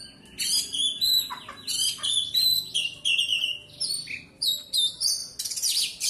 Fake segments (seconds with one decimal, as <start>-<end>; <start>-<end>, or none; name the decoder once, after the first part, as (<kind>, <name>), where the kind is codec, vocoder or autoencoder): none